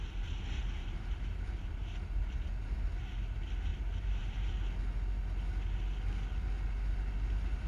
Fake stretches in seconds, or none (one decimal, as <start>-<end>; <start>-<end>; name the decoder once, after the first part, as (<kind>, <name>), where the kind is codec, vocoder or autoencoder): 0.6-1.8 (vocoder, BigVGAN v2); 3.7-4.5